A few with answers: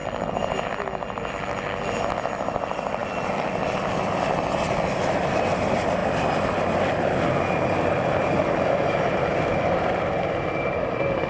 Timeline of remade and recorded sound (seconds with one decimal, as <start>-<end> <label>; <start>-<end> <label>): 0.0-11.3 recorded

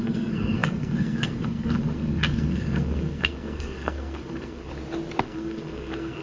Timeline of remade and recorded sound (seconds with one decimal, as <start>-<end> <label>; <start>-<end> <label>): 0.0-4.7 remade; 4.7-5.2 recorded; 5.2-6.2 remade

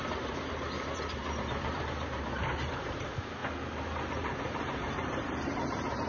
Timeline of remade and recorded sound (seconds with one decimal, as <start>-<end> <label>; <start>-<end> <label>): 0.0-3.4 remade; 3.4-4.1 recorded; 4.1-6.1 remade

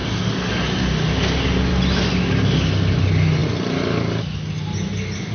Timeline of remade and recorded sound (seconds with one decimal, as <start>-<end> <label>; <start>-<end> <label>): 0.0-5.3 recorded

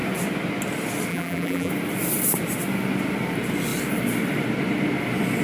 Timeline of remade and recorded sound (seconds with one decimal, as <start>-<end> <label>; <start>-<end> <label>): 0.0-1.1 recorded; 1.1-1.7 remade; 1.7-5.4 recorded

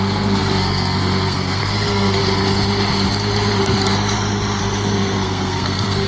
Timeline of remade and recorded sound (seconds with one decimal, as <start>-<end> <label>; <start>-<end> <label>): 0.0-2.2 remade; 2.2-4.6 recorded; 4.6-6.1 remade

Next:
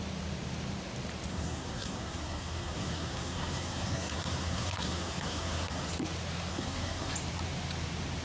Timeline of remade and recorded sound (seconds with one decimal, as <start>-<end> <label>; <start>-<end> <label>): 0.0-1.3 recorded; 1.3-5.9 remade; 5.9-6.5 recorded; 6.5-7.1 remade; 7.1-8.2 recorded